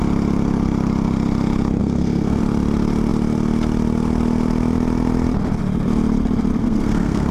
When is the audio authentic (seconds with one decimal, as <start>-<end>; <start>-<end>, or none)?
0.0-1.8; 2.4-6.6